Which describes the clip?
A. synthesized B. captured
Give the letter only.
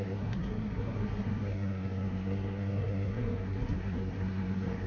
A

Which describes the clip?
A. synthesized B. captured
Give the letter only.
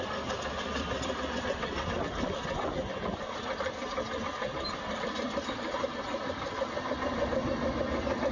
B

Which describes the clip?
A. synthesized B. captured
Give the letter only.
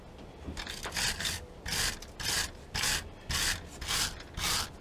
B